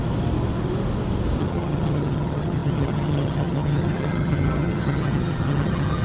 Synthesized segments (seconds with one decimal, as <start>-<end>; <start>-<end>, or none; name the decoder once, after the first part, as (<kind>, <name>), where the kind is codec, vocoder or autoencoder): 1.4-6.0 (vocoder, HiFi-GAN)

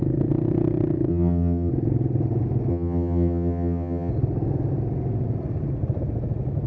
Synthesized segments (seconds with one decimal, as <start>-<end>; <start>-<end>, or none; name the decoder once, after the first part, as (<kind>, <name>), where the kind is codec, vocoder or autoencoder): 1.1-1.7 (vocoder, HiFi-GAN); 2.7-4.1

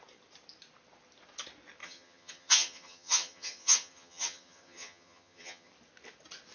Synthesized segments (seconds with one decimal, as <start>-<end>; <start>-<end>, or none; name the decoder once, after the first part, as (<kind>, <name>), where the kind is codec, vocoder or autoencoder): 1.8-5.7 (vocoder, HiFi-GAN)

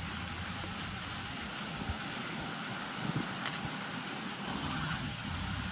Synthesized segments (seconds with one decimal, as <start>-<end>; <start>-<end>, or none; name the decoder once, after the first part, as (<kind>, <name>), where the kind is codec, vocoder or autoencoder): 4.6-5.3 (vocoder, HiFi-GAN)

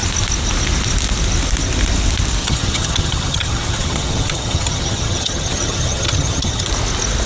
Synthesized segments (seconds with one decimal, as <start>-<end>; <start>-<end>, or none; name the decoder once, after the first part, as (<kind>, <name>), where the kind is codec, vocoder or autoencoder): 2.4-6.7 (vocoder, HiFi-GAN)

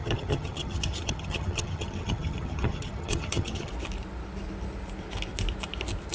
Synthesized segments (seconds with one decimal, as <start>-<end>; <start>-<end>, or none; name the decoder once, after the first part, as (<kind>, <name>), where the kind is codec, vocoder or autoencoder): 0.0-3.7 (vocoder, HiFi-GAN)

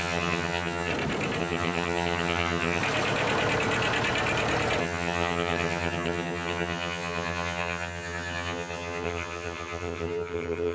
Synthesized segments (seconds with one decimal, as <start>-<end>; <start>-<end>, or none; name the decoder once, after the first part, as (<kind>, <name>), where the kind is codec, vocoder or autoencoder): 0.0-0.9 (vocoder, HiFi-GAN); 1.4-2.8; 4.8-10.7

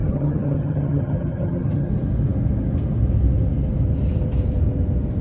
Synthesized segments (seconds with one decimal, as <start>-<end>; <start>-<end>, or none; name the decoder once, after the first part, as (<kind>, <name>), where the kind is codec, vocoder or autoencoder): 0.0-1.9 (vocoder, HiFi-GAN)